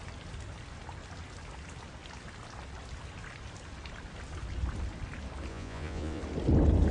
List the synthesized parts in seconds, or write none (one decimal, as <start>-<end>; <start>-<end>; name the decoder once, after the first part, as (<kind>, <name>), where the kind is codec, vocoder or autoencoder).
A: 5.5-6.2 (vocoder, Vocos)